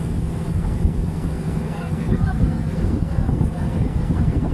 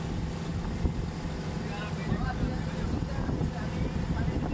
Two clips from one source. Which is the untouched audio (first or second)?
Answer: second